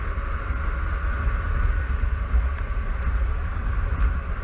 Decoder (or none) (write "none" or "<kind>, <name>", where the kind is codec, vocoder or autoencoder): none